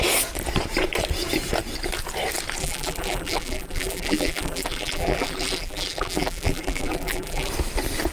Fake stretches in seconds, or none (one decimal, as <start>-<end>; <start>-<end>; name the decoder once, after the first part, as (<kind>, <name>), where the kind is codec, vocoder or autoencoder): 2.6-7.5 (vocoder, BigVGAN v2)